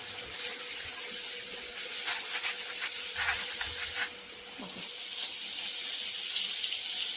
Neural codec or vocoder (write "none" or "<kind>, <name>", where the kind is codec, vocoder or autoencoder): none